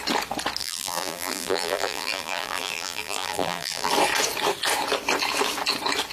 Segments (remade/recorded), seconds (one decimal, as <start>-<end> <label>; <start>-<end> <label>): 0.0-0.6 recorded; 0.6-3.9 remade; 3.9-6.1 recorded

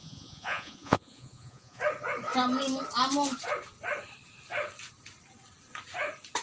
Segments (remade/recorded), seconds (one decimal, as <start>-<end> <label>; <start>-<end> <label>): 0.0-1.8 remade; 1.8-6.4 recorded

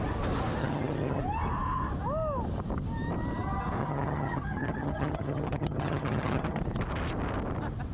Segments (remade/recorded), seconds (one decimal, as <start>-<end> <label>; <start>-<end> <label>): 0.0-0.6 recorded; 0.6-1.2 remade; 1.2-3.8 recorded; 3.8-6.6 remade; 6.6-7.9 recorded

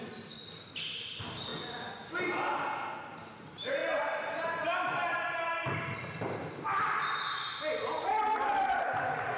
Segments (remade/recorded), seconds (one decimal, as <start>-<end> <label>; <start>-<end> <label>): 0.0-9.4 recorded

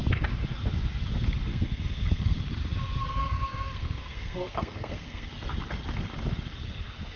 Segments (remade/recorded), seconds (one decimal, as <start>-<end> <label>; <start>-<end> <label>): 0.0-1.5 recorded; 1.5-2.4 remade; 2.4-3.0 recorded; 3.0-5.3 remade; 5.3-7.2 recorded